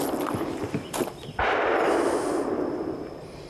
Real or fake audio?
real